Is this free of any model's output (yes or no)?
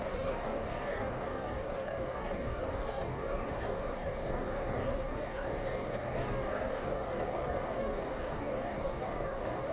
no